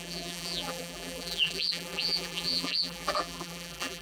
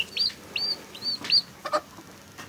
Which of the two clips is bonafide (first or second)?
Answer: second